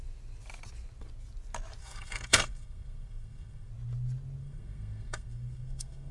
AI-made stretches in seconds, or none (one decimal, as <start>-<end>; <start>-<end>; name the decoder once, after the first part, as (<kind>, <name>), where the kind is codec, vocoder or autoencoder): 1.8-3.7 (codec, SNAC); 4.4-6.1